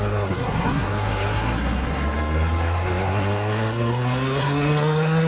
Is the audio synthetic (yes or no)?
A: yes